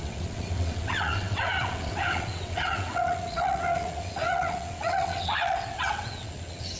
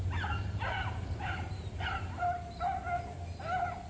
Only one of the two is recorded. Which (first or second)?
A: second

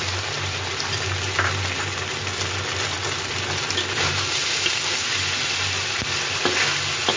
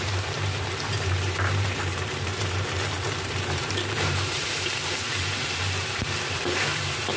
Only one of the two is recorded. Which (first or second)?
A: first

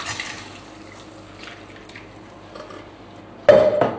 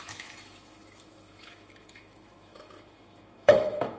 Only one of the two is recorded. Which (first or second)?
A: first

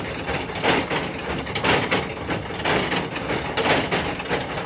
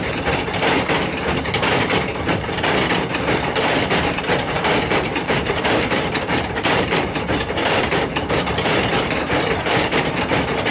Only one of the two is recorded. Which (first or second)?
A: first